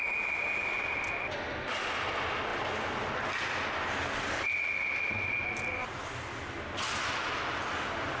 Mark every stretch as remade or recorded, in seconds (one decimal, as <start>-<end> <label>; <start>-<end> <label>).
0.0-8.2 recorded